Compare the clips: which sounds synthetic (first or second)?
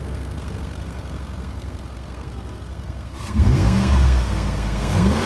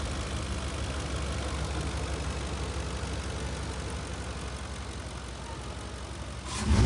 first